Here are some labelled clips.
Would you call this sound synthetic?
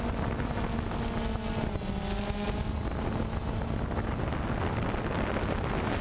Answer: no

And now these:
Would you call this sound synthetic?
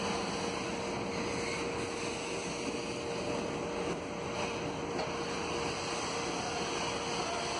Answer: no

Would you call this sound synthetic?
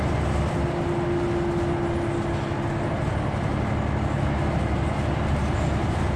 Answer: no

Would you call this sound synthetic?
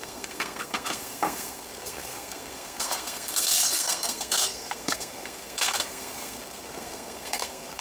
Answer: yes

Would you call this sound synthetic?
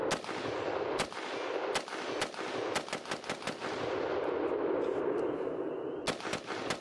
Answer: no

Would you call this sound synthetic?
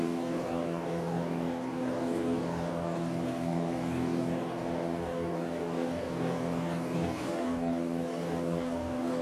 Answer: yes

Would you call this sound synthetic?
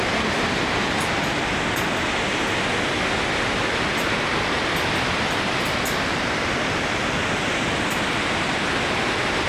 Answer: no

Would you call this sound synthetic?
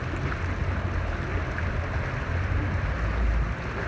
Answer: no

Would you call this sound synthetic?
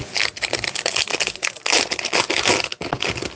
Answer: no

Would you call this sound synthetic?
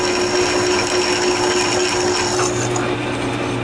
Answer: no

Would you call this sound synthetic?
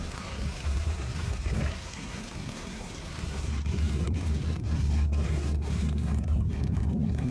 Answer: yes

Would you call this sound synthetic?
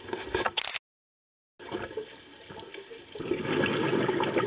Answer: no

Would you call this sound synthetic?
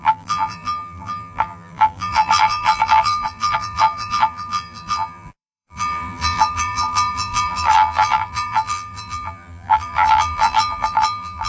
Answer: yes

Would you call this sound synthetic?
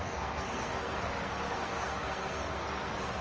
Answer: yes